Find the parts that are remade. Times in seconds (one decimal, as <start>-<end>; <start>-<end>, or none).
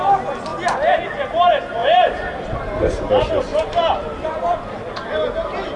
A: 0.5-1.0; 1.8-3.1; 3.5-4.7